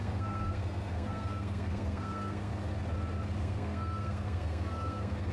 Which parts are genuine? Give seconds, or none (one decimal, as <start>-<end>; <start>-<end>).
2.5-3.4